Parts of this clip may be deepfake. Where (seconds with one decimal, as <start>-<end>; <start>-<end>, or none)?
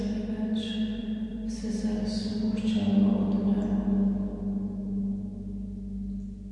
0.9-1.7